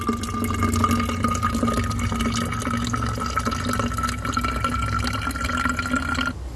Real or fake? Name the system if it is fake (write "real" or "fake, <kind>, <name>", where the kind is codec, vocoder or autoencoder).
real